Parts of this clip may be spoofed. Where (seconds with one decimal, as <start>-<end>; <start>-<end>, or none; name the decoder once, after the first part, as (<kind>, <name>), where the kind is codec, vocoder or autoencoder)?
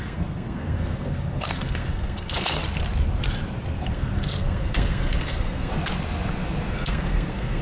0.0-2.6 (codec, SNAC); 3.9-5.7; 6.7-7.6